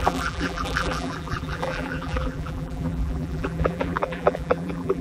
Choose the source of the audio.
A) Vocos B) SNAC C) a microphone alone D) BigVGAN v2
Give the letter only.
D